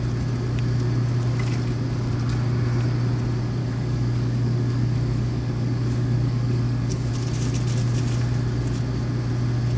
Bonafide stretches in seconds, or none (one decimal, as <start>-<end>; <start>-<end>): 0.0-3.6; 7.1-9.8

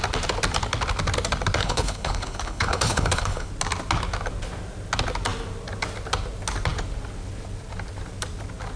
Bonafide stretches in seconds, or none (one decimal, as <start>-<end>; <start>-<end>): 0.0-1.6; 3.5-8.8

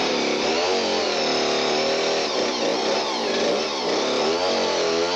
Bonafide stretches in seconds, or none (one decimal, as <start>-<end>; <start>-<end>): 0.0-5.2

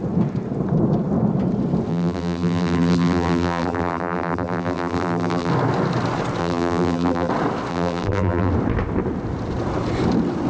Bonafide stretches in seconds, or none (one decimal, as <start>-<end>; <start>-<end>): 0.0-1.9; 5.5-6.4; 7.3-7.7; 8.5-10.5

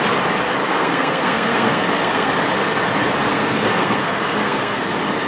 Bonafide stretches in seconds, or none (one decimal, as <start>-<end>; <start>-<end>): 0.0-0.6; 2.3-3.3; 4.8-5.3